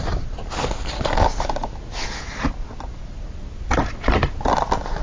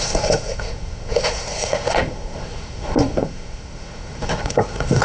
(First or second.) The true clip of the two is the first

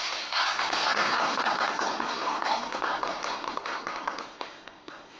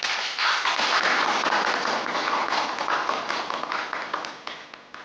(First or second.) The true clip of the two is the second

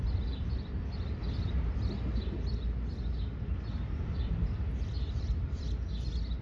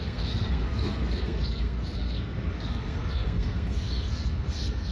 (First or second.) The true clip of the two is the first